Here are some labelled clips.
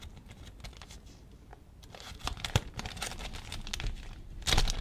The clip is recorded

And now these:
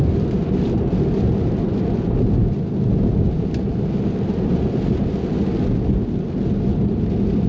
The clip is recorded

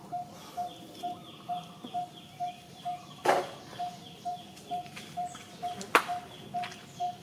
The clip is recorded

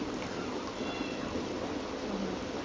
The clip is recorded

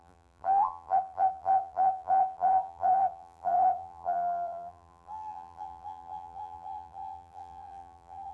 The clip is remade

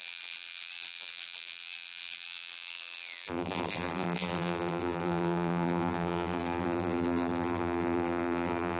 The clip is remade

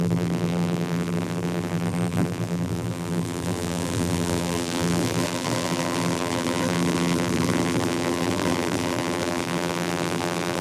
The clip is remade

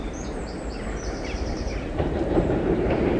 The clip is remade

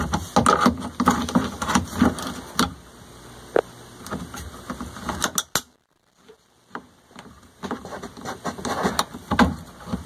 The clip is recorded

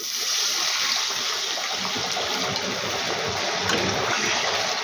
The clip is recorded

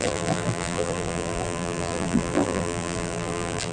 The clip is remade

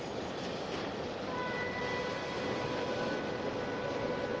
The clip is remade